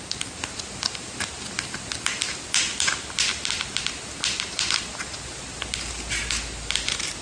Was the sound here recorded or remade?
recorded